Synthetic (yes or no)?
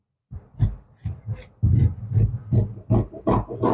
no